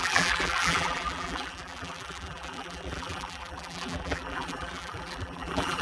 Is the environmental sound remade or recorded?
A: remade